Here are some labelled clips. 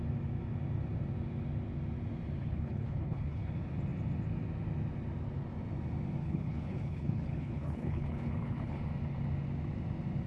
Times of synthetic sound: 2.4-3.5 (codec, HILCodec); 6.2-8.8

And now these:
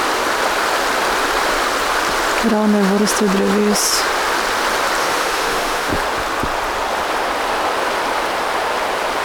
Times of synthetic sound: 5.0-5.9 (autoencoder, DAC-VAE)

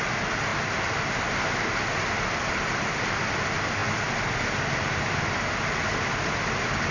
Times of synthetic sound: none

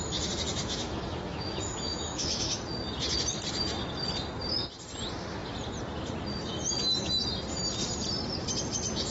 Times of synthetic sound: 0.5-2.6 (autoencoder, DAC-VAE)

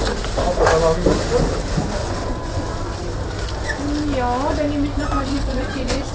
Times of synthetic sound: 2.0-2.6 (vocoder, Vocos); 4.9-6.1

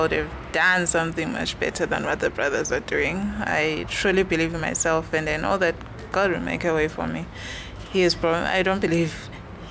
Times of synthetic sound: 7.5-8.9 (autoencoder, DAC-VAE)